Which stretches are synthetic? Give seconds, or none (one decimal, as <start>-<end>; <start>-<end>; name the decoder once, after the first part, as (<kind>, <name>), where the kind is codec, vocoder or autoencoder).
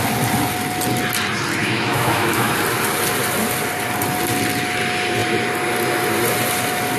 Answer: 1.6-2.5 (autoencoder, DAC-VAE)